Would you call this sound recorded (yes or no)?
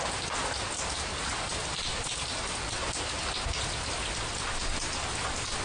yes